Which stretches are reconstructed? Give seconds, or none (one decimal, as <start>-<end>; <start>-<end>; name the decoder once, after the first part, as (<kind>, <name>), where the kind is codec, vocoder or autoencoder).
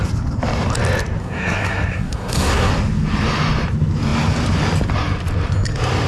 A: 1.2-2.7 (codec, SNAC)